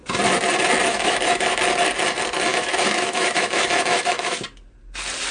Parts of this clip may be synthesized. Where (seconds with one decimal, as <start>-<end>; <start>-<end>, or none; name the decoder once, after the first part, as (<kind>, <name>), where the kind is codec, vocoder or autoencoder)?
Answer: 0.9-1.6 (autoencoder, DAC-VAE); 2.5-4.4